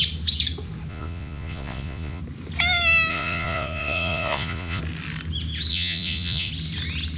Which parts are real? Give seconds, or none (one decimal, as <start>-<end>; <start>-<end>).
0.0-0.9; 2.2-3.1; 4.8-5.7; 6.5-7.2